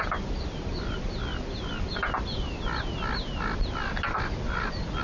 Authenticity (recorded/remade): recorded